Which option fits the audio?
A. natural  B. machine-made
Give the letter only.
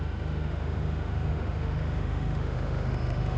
B